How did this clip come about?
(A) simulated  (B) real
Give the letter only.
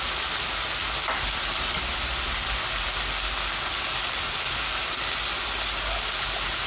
B